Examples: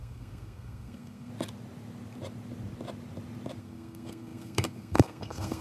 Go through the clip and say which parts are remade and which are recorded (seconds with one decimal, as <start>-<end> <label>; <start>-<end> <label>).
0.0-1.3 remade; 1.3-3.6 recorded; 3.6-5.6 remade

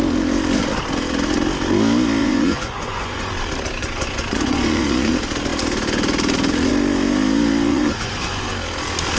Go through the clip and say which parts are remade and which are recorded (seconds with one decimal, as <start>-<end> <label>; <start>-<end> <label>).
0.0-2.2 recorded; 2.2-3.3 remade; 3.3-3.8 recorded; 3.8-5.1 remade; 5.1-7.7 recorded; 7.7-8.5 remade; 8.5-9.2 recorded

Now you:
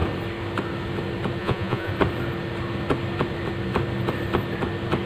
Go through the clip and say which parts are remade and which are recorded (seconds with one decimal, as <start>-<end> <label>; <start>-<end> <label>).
0.0-1.4 recorded; 1.4-1.9 remade; 1.9-5.1 recorded